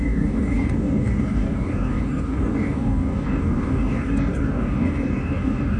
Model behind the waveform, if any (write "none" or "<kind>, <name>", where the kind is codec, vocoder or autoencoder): codec, DAC